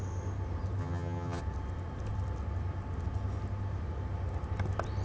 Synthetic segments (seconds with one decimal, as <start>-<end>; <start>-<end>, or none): 0.8-1.4